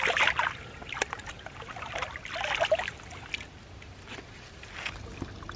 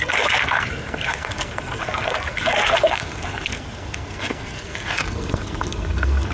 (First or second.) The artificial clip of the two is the second